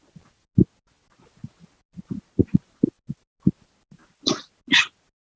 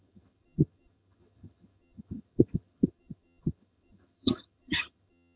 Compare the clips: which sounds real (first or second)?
first